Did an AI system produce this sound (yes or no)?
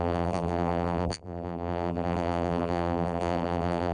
yes